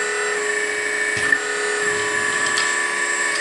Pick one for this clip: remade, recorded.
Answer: recorded